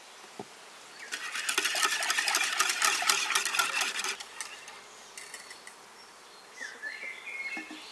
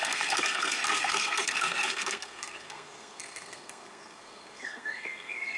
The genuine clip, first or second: first